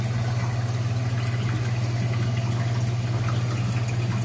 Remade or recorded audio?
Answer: recorded